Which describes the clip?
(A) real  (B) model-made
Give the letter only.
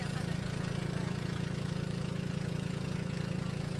B